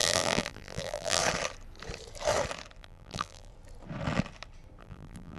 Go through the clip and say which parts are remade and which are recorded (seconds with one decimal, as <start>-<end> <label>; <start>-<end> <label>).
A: 0.0-1.2 remade; 1.2-2.8 recorded; 2.8-3.5 remade; 3.5-4.8 recorded; 4.8-5.4 remade

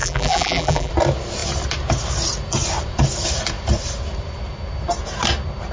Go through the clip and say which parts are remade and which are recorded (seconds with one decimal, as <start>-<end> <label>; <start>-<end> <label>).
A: 0.0-0.9 remade; 0.9-5.7 recorded

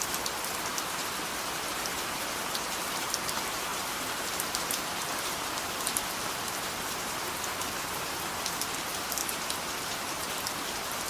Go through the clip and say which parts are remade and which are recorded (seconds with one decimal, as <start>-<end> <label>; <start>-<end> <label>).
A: 0.0-0.7 recorded; 0.7-3.1 remade; 3.1-3.7 recorded; 3.7-6.7 remade; 6.7-9.2 recorded; 9.2-10.6 remade; 10.6-11.1 recorded